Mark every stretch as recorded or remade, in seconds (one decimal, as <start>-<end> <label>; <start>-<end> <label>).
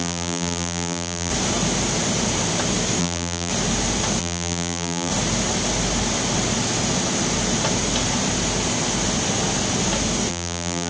0.0-1.3 remade; 1.3-3.0 recorded; 3.0-3.5 remade; 3.5-4.2 recorded; 4.2-5.1 remade; 5.1-10.3 recorded; 10.3-10.9 remade